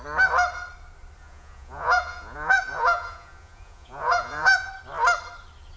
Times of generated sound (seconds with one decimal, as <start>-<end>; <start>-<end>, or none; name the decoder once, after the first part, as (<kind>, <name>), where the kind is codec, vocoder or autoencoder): 1.2-4.7 (vocoder, Vocos)